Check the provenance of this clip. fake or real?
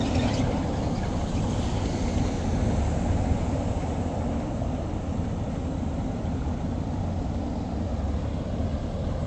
real